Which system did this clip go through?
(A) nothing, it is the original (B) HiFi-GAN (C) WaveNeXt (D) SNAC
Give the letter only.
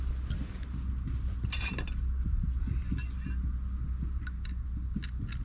A